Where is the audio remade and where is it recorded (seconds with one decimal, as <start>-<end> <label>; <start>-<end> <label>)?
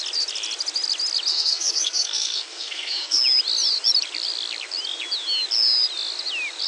0.0-1.3 recorded; 1.3-3.2 remade; 3.2-6.7 recorded